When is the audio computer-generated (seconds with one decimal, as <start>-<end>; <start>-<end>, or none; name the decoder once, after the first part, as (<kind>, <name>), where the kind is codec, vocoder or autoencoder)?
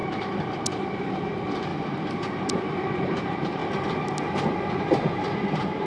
0.0-1.7 (vocoder, BigVGAN v2); 2.5-3.6; 4.7-5.9